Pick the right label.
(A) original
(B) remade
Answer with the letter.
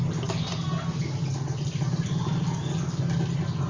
A